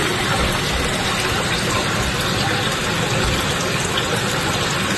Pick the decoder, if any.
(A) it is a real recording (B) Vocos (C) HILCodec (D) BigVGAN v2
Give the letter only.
A